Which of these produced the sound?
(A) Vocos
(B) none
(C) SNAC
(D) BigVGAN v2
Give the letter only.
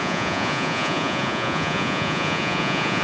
A